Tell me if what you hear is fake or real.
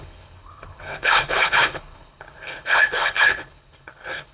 fake